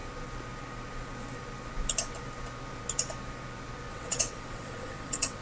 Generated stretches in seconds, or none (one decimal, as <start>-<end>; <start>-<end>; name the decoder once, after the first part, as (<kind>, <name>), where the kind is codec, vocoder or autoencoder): 3.9-5.4 (vocoder, WaveNeXt)